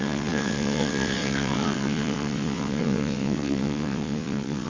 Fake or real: fake